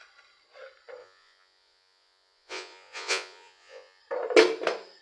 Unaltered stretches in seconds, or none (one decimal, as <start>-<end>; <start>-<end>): 0.0-1.0; 4.0-5.0